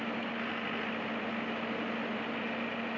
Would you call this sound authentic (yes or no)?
yes